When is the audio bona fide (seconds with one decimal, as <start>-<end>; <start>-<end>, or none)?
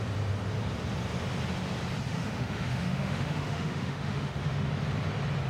0.0-2.1; 4.7-5.5